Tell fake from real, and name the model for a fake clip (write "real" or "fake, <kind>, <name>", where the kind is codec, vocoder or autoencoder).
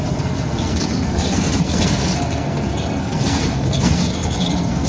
fake, codec, SNAC